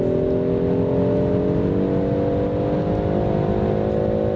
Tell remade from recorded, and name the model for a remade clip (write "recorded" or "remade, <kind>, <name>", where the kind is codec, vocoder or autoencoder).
recorded